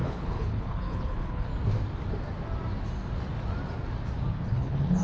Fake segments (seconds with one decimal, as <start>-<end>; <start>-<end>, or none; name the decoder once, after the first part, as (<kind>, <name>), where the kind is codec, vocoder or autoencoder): 0.0-1.5 (codec, HILCodec); 4.5-5.0